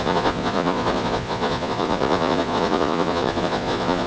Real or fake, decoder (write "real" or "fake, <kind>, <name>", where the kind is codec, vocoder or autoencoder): fake, vocoder, Vocos